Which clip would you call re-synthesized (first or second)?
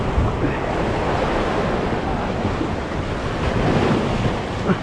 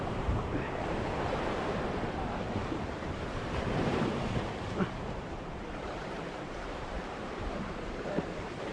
second